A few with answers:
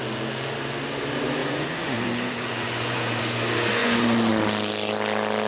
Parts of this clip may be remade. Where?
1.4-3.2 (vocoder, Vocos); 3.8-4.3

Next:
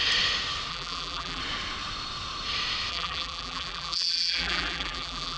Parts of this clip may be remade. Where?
0.7-1.4 (vocoder, BigVGAN v2); 2.9-5.4

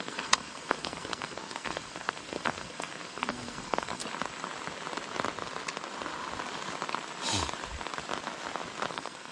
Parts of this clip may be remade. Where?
0.0-4.0 (codec, SNAC); 8.9-9.3

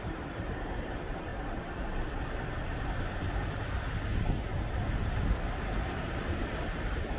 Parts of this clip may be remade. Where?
0.0-1.3 (vocoder, BigVGAN v2); 5.6-7.2

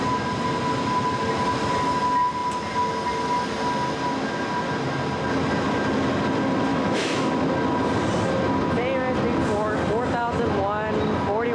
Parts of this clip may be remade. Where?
6.7-7.3 (autoencoder, DAC-VAE)

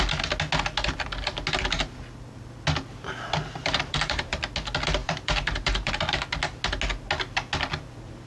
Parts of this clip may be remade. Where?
3.6-4.4 (vocoder, BigVGAN v2); 5.0-5.9

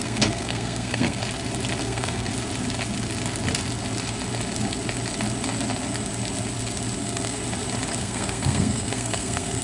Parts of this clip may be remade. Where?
0.0-1.2 (codec, SNAC); 1.8-2.3; 7.0-7.4; 8.0-9.6